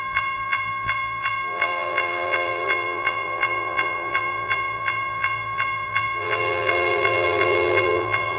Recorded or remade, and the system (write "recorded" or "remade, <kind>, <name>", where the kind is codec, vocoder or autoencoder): remade, vocoder, BigVGAN v2